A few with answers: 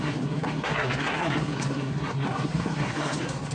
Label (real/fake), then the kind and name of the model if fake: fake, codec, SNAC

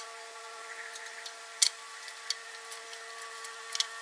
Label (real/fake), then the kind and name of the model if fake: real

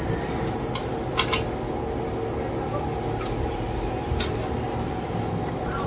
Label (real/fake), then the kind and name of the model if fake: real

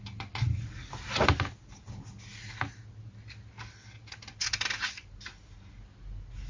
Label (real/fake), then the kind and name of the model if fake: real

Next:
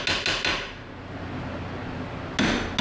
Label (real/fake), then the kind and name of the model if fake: real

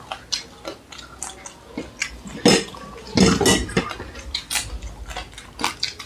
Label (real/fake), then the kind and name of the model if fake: real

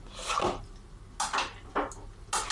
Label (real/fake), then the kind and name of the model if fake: real